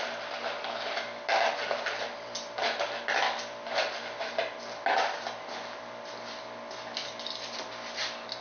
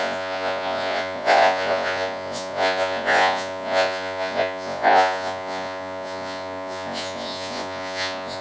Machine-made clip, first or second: second